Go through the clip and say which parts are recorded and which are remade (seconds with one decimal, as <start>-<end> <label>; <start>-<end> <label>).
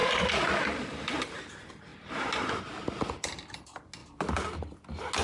0.0-1.4 remade; 1.4-1.9 recorded; 1.9-2.6 remade; 2.6-4.0 recorded; 4.0-4.5 remade; 4.5-5.2 recorded